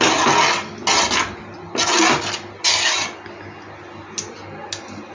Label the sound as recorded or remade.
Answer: recorded